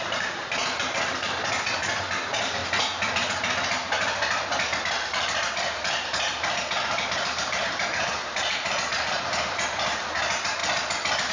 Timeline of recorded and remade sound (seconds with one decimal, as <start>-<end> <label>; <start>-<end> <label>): 0.0-2.6 remade; 2.6-4.8 recorded; 4.8-10.6 remade; 10.6-11.3 recorded